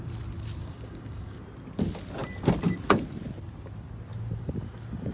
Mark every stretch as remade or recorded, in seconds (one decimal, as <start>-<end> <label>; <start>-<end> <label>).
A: 0.0-0.6 recorded; 0.6-1.4 remade; 1.4-5.1 recorded